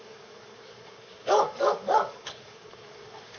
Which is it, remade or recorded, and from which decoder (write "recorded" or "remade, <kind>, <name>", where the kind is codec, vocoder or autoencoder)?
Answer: remade, codec, DAC